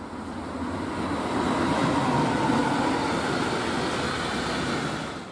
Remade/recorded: recorded